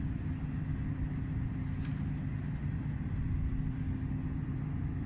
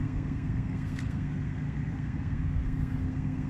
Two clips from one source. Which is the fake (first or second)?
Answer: second